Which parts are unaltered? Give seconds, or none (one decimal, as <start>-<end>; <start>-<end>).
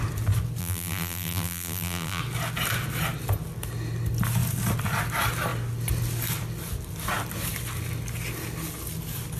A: 0.0-0.6; 2.2-9.4